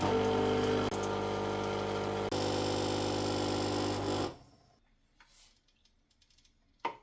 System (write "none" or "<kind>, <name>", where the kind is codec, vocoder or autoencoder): none